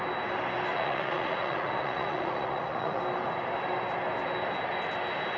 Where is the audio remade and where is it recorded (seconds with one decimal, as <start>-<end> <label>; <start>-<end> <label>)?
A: 0.0-0.7 recorded; 0.7-3.0 remade; 3.0-5.4 recorded

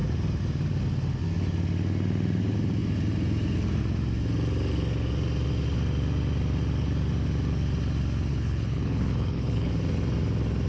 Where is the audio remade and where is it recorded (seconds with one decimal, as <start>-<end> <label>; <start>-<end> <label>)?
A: 0.0-8.3 recorded; 8.3-9.7 remade; 9.7-10.7 recorded